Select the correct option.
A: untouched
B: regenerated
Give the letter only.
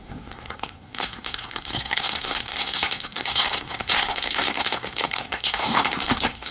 B